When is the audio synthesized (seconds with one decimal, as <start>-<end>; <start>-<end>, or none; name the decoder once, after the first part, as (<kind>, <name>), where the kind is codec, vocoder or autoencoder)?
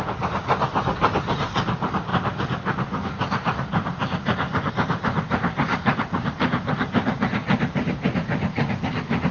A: 2.1-4.7 (vocoder, BigVGAN v2); 5.7-8.7